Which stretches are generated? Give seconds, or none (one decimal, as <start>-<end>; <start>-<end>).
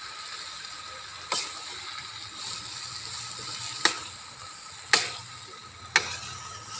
none